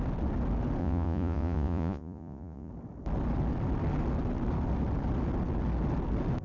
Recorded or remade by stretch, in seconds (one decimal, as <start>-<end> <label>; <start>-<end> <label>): 0.0-0.8 recorded; 0.8-2.7 remade; 2.7-6.4 recorded

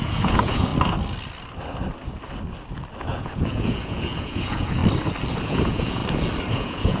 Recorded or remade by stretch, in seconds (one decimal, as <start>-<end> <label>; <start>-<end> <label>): 0.0-0.7 remade; 0.7-3.0 recorded; 3.0-4.8 remade; 4.8-5.4 recorded; 5.4-6.0 remade; 6.0-6.5 recorded; 6.5-7.0 remade

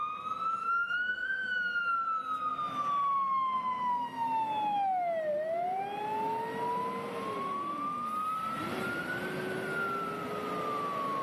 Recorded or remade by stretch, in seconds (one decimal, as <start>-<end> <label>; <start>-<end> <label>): 0.0-0.6 recorded; 0.6-1.5 remade; 1.5-11.2 recorded

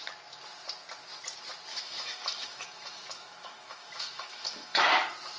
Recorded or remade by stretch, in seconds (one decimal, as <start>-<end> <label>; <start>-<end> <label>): 0.0-1.7 recorded; 1.7-4.9 remade; 4.9-5.4 recorded

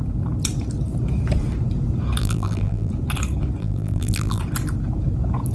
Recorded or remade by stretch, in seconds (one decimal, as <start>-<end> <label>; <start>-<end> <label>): 0.0-2.2 recorded; 2.2-2.9 remade; 2.9-3.6 recorded; 3.6-4.4 remade; 4.4-5.5 recorded

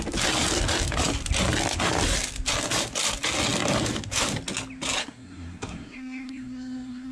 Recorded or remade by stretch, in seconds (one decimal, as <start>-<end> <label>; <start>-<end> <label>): 0.0-5.0 recorded; 5.0-7.1 remade